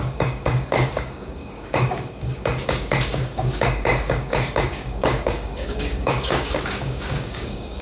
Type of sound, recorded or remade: remade